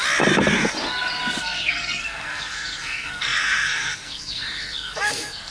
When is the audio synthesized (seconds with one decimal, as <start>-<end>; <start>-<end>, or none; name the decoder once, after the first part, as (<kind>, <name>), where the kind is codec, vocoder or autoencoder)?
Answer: 1.4-5.5 (codec, SNAC)